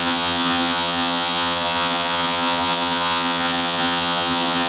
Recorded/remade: remade